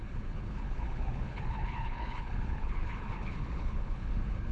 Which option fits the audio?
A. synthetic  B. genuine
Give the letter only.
A